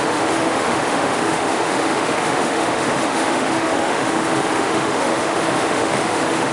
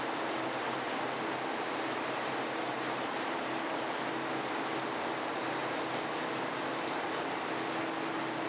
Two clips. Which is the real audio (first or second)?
second